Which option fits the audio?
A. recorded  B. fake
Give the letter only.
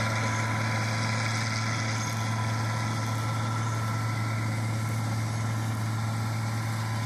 A